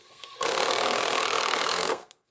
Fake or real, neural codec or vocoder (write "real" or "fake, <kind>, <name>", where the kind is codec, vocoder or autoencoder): fake, codec, SNAC